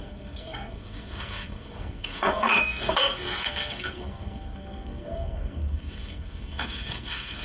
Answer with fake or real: fake